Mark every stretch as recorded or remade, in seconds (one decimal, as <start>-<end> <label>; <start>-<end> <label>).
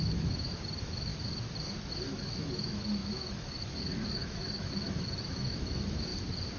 0.0-1.1 remade; 1.1-1.9 recorded; 1.9-6.1 remade; 6.1-6.6 recorded